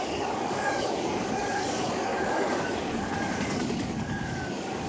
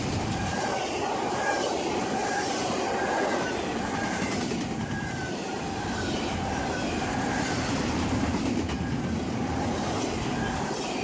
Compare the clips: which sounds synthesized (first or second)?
first